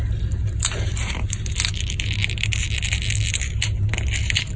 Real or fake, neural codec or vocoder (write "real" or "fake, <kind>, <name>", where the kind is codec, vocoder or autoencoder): real